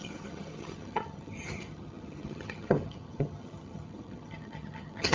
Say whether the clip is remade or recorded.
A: remade